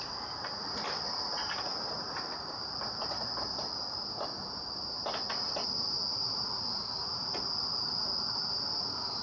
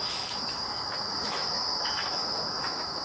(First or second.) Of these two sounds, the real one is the first